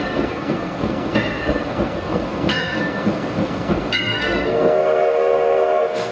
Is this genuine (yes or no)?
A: no